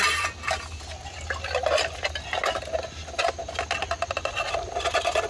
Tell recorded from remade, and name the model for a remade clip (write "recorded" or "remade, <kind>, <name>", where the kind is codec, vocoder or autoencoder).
recorded